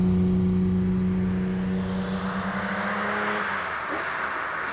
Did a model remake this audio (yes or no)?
no